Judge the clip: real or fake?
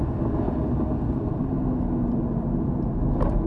real